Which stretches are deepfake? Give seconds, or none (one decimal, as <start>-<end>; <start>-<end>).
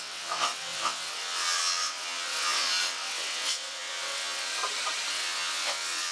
0.0-4.6; 5.1-6.1